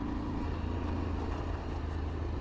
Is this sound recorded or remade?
recorded